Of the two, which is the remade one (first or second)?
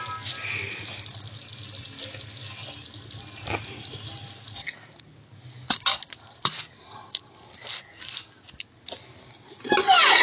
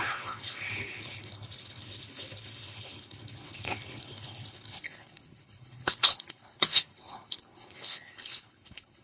second